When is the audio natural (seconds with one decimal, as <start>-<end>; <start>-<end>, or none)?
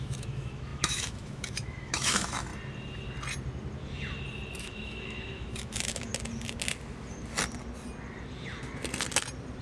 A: 2.5-4.6; 6.1-9.6